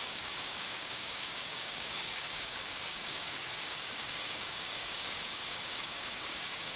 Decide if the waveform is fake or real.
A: fake